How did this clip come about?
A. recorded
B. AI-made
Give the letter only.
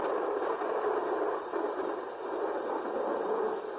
A